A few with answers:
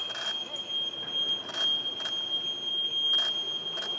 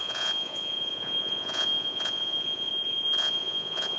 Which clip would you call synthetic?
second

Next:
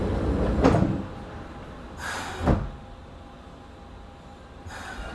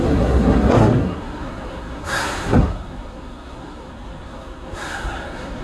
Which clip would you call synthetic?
second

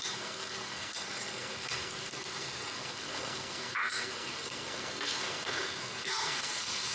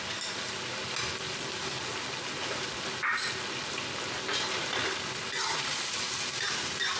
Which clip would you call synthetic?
first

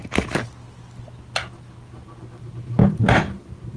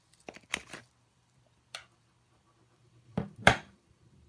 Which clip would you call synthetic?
second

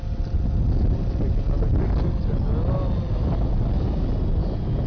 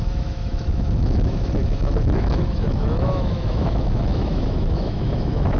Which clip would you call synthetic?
second